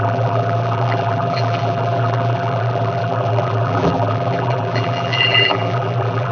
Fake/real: fake